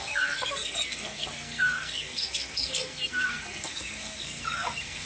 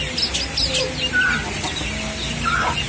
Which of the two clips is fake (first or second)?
first